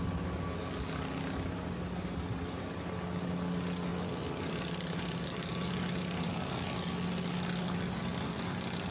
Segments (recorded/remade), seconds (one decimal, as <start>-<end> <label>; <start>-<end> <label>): 0.0-8.9 recorded